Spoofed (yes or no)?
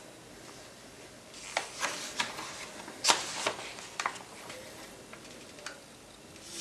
no